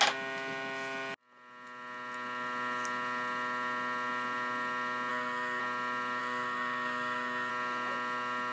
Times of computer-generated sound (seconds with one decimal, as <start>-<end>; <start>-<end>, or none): 5.1-5.6; 6.2-7.5